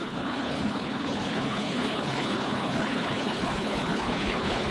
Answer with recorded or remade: remade